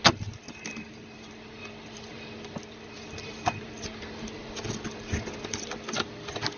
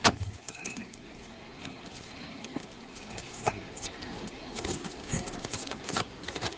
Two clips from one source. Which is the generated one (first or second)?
second